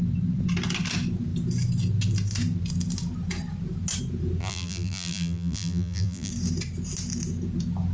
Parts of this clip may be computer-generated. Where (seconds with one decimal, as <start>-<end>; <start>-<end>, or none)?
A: 4.4-6.3